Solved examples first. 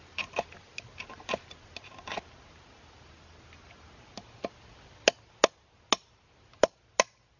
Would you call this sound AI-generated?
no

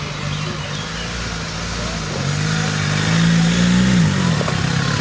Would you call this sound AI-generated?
no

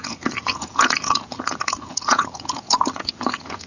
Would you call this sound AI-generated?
yes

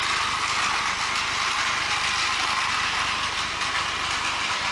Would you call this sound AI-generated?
no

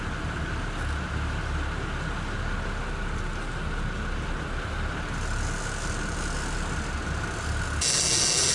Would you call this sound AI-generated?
no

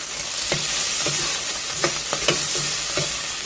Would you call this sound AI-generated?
no